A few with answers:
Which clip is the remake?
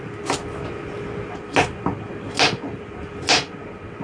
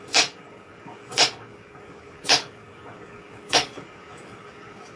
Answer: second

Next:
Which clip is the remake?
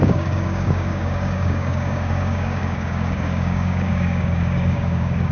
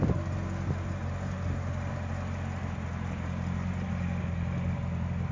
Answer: first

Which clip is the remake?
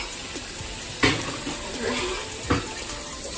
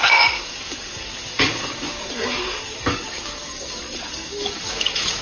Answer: second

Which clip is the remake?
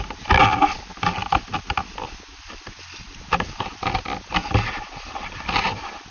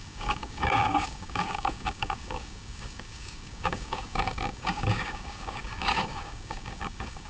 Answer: second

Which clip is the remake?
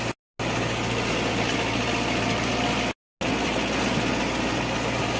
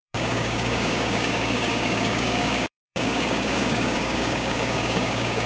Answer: second